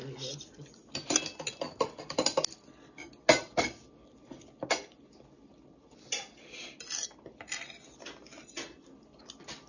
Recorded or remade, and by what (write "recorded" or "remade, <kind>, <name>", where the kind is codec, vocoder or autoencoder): recorded